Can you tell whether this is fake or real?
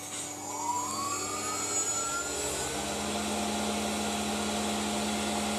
real